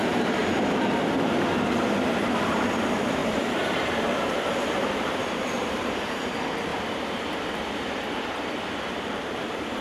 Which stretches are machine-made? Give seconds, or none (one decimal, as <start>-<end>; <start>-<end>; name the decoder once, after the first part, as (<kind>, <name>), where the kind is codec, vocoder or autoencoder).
0.0-0.4 (vocoder, BigVGAN v2); 2.4-6.7; 8.9-9.8